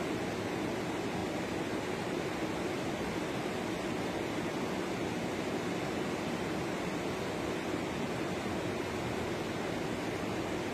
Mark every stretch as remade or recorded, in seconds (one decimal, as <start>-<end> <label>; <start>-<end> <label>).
0.0-10.7 recorded